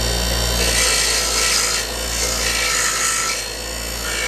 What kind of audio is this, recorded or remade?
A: recorded